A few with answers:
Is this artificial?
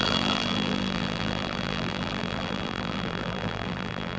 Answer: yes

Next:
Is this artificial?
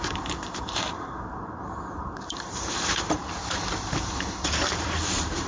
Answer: yes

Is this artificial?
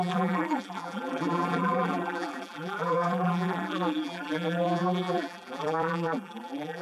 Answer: yes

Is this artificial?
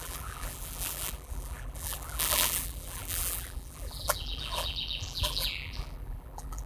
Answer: yes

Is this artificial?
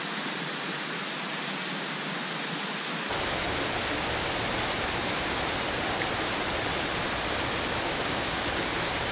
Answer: no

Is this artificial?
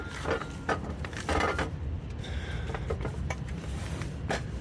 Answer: yes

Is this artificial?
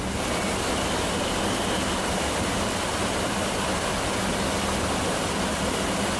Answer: no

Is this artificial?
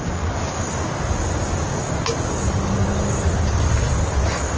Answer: no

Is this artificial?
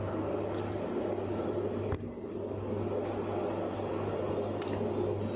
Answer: no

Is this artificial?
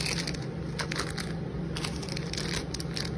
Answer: yes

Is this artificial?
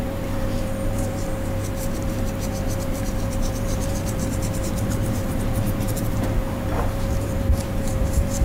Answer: yes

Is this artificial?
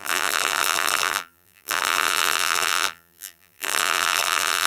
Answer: yes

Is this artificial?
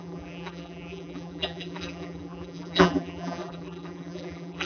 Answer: yes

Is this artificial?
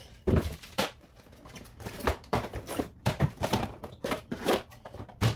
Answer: yes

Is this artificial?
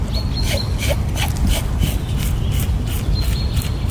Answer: no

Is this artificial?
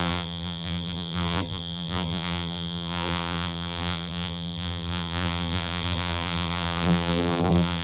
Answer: yes